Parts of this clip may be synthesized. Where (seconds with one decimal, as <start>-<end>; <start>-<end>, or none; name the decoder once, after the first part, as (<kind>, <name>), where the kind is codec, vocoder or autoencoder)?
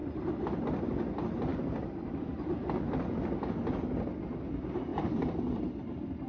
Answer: none